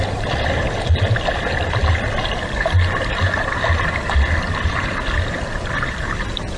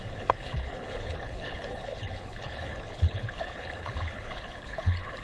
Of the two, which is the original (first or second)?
first